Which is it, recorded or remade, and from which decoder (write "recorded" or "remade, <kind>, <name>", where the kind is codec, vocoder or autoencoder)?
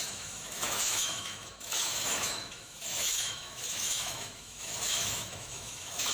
remade, autoencoder, DAC-VAE